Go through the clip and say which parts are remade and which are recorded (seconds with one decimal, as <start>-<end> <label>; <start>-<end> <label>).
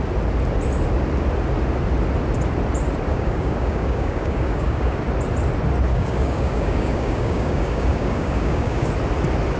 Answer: 0.0-3.1 recorded; 3.1-5.0 remade; 5.0-5.9 recorded; 5.9-8.9 remade; 8.9-9.6 recorded